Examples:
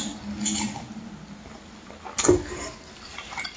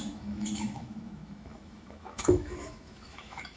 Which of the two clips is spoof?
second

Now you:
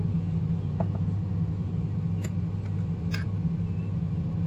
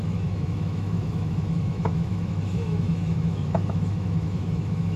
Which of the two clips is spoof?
second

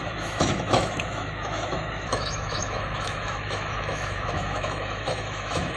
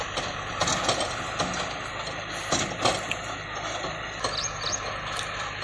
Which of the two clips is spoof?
first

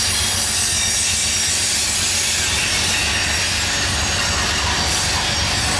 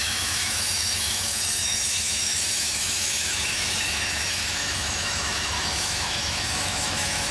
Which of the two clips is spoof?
second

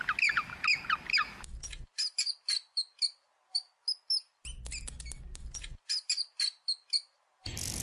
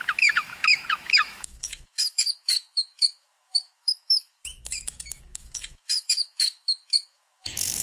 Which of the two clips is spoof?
second